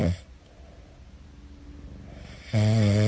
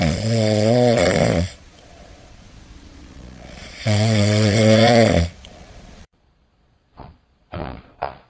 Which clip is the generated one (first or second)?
second